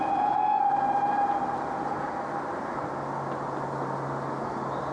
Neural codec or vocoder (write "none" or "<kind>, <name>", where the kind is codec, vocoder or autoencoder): none